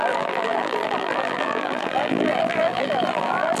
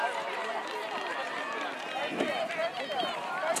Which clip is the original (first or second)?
second